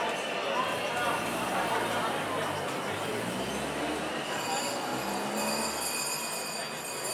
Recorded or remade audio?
recorded